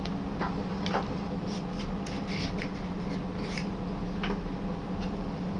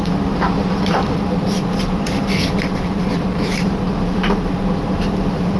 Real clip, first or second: first